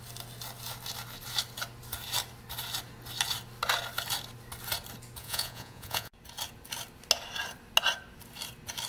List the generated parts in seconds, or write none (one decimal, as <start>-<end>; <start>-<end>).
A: 5.2-6.1